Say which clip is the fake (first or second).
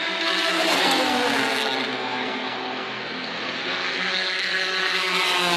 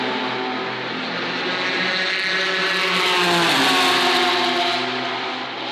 first